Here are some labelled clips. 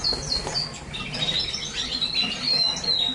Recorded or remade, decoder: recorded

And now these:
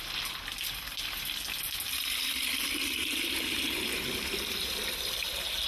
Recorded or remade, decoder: recorded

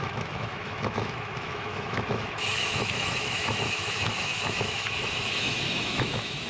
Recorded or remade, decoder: remade, autoencoder, DAC-VAE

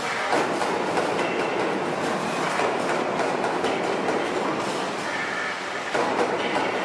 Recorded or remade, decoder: recorded